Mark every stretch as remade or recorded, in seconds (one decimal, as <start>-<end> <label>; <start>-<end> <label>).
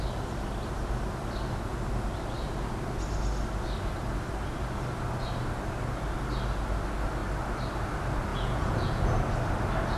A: 0.0-8.3 recorded; 8.3-9.0 remade; 9.0-10.0 recorded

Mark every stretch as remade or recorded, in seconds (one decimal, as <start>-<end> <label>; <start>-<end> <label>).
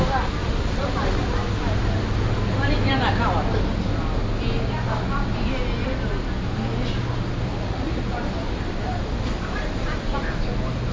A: 0.0-7.5 recorded; 7.5-8.0 remade; 8.0-10.9 recorded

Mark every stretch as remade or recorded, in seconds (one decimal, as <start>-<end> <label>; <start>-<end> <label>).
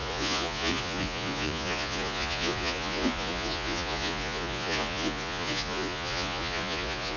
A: 0.0-7.2 remade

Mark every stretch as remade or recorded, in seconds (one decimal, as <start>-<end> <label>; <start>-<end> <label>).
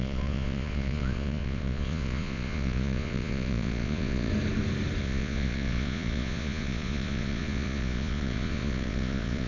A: 0.0-4.3 remade; 4.3-5.0 recorded; 5.0-9.5 remade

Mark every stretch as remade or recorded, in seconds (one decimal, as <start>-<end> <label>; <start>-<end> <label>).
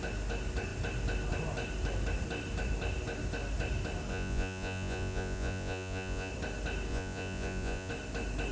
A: 0.0-4.1 recorded; 4.1-6.3 remade; 6.3-6.9 recorded; 6.9-7.9 remade; 7.9-8.5 recorded